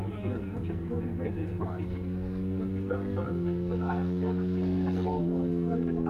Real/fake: fake